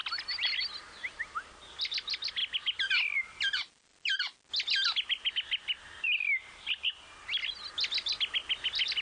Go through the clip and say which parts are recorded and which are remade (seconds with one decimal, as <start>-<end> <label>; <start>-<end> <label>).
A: 0.0-9.0 recorded